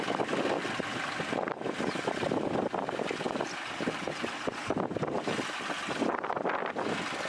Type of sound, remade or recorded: recorded